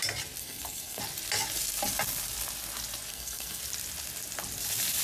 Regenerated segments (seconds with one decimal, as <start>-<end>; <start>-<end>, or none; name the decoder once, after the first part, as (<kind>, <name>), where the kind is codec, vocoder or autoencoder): 0.4-1.0 (codec, SNAC); 3.1-3.6